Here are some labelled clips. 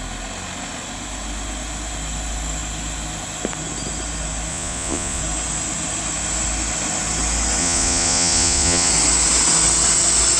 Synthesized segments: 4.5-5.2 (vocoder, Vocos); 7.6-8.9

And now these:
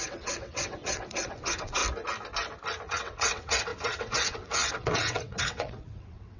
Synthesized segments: 0.0-1.8 (vocoder, WaveNeXt); 2.9-6.4

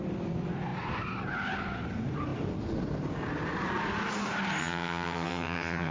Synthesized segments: 4.6-5.9 (vocoder, HiFi-GAN)

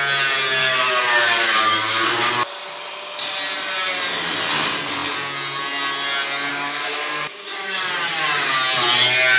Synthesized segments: 0.6-2.3 (codec, DAC); 6.5-7.8

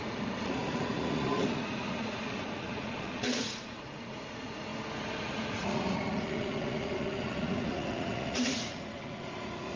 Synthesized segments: 0.0-4.7 (vocoder, Vocos); 5.2-9.8

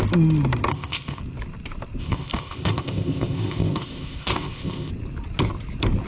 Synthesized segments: 0.7-1.2 (codec, ZipCodec); 2.0-4.9

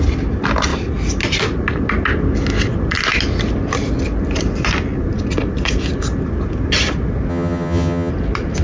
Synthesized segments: 7.3-8.1 (vocoder, HiFi-GAN)

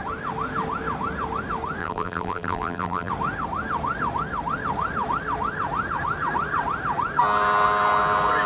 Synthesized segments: 1.8-3.1 (vocoder, BigVGAN v2)